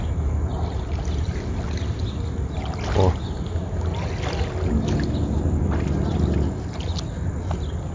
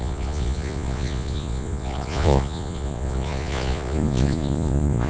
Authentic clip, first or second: first